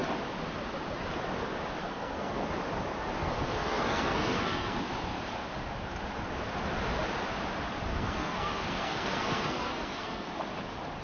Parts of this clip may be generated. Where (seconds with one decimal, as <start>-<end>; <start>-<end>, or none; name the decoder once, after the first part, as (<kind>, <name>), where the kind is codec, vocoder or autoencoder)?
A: 1.8-2.5 (codec, SNAC); 3.2-4.8; 7.9-10.3